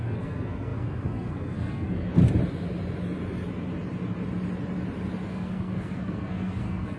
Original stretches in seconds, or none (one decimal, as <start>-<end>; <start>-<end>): 2.2-5.3